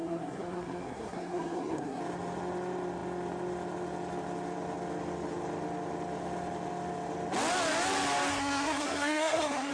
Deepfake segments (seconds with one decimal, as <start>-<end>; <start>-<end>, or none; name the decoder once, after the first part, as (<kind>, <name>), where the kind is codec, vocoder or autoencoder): 0.0-2.0 (codec, SNAC); 8.3-9.7